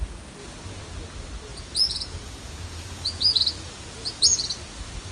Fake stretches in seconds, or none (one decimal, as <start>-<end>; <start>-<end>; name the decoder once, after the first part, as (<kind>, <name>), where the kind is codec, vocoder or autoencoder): 1.5-4.6 (vocoder, Vocos)